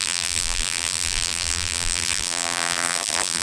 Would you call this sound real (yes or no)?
no